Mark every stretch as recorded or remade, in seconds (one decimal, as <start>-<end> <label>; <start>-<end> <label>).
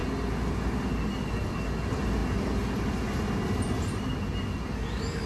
0.0-5.3 recorded